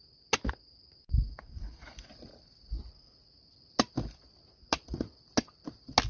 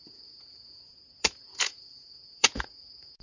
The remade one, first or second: second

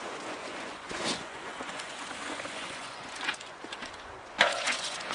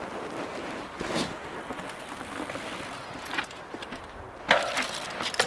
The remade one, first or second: first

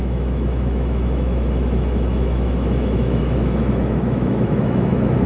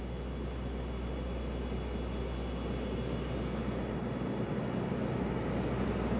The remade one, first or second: first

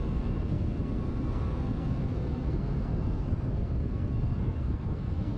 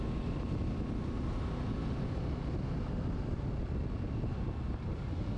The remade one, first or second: first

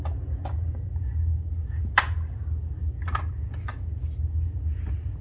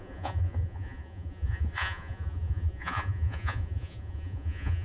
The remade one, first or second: second